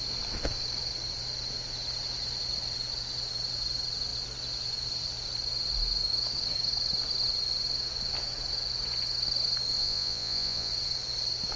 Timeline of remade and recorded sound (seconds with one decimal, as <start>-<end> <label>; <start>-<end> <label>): 0.0-9.8 recorded; 9.8-10.7 remade; 10.7-11.6 recorded